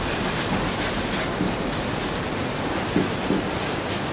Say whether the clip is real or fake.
real